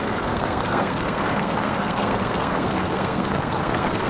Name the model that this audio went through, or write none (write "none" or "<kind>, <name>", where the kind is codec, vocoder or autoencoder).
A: codec, SNAC